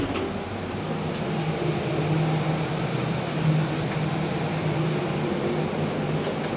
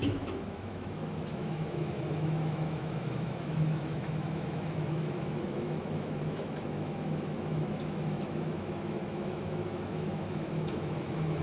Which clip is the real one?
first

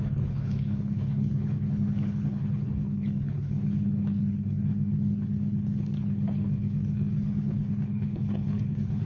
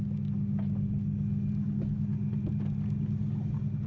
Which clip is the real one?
second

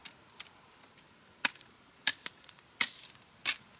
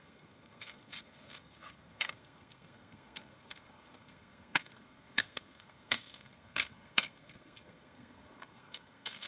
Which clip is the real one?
first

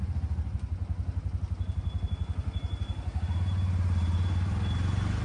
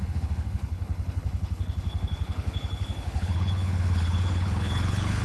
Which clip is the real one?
first